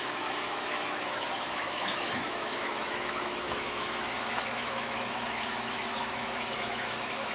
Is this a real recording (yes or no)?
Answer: no